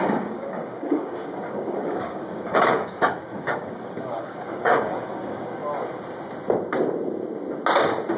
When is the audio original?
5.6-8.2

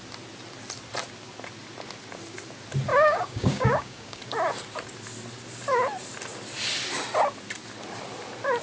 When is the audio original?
0.0-2.9; 4.2-8.6

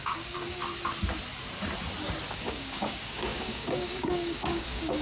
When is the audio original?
0.6-2.3

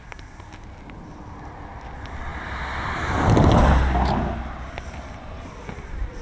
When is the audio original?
0.0-6.2